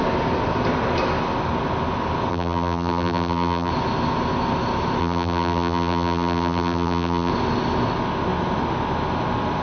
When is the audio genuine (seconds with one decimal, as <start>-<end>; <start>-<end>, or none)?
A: 0.0-2.3; 3.7-5.0; 7.3-9.6